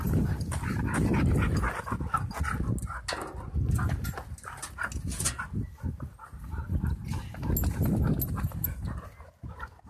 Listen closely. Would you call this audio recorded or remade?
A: recorded